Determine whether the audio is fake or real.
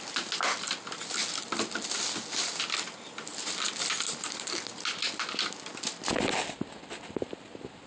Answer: real